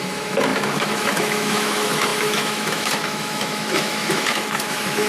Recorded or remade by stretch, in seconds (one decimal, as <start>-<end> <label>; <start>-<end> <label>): 0.0-5.1 remade